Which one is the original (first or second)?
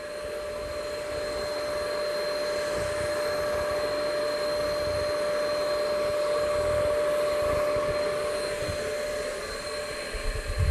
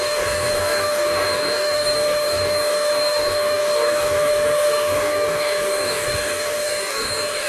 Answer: first